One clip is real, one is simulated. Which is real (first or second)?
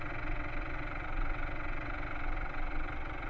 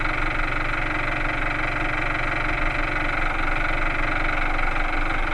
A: second